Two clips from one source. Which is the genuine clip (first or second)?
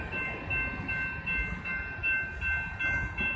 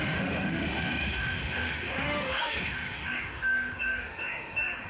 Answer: first